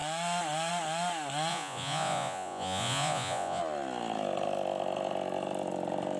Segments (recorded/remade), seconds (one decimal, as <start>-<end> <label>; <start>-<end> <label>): 0.0-1.5 recorded; 1.5-3.6 remade; 3.6-6.2 recorded